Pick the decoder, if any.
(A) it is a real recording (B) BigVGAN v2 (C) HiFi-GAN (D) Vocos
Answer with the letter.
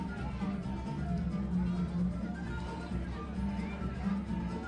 A